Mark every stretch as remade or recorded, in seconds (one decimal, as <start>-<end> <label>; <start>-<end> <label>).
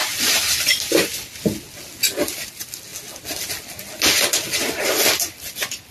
0.0-5.9 recorded